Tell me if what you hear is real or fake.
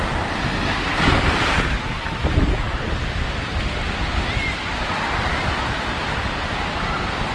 real